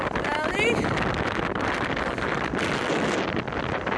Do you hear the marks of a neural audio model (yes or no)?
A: no